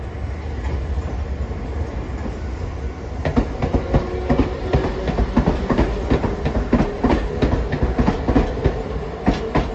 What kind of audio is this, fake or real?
real